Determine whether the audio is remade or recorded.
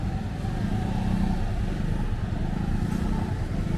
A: recorded